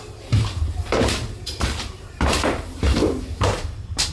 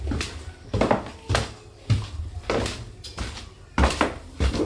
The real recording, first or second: second